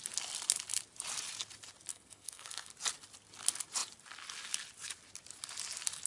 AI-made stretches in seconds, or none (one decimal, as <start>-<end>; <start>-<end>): 1.9-2.7